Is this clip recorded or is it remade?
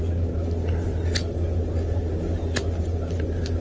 recorded